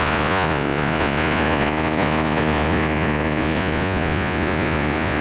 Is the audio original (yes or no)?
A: no